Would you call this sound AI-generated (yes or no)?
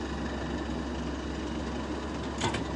no